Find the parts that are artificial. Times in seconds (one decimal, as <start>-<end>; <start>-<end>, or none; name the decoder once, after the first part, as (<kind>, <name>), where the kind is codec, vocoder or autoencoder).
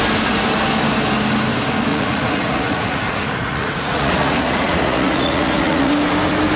1.9-5.9 (vocoder, Vocos)